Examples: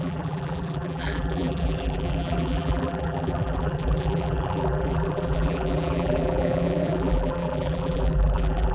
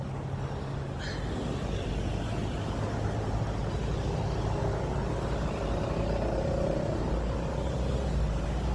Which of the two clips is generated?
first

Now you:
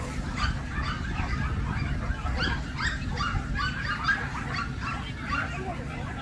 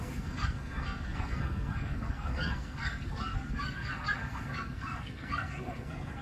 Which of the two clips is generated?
second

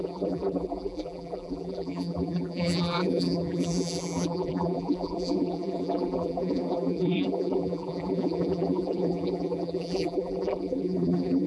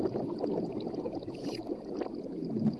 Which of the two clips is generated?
first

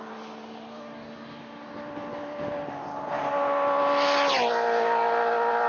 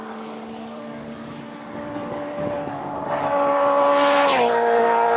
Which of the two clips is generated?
second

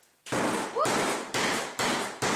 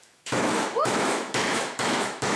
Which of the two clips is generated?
second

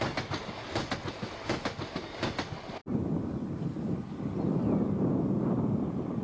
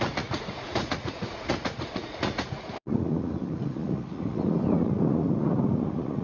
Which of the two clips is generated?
second